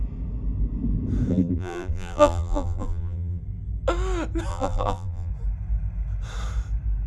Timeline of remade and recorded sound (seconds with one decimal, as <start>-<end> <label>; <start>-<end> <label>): 0.0-1.3 recorded; 1.3-3.4 remade; 3.4-4.5 recorded; 4.5-5.3 remade; 5.3-7.1 recorded